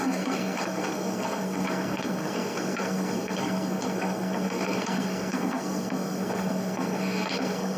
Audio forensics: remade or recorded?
remade